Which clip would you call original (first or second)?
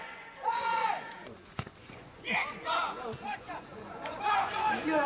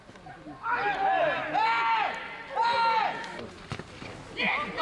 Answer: second